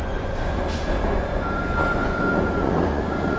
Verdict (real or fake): fake